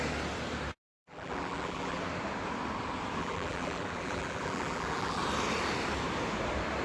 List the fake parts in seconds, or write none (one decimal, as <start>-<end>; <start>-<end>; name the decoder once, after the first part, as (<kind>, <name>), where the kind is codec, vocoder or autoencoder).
1.0-2.0 (vocoder, BigVGAN v2); 3.2-5.2